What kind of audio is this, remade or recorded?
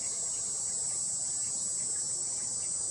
recorded